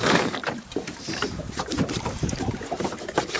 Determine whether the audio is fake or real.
fake